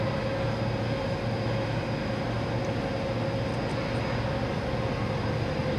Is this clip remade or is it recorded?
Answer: recorded